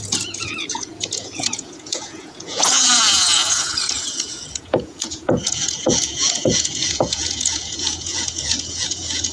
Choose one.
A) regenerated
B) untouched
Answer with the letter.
A